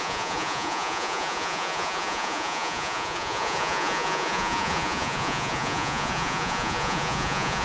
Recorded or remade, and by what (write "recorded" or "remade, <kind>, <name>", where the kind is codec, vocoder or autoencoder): remade, vocoder, Vocos